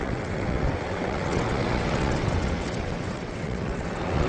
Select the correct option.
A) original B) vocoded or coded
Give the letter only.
B